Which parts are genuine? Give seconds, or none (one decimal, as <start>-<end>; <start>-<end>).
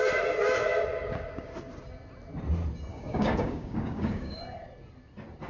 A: 0.0-2.9; 4.4-5.5